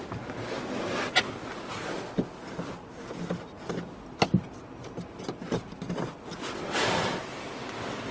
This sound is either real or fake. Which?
real